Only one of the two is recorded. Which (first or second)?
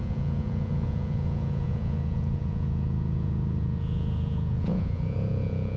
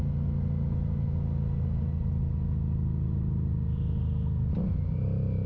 second